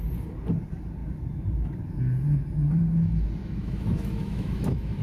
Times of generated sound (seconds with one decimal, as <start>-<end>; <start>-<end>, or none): 3.4-5.0